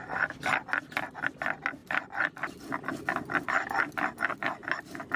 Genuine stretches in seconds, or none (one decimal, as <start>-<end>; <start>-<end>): 0.0-5.2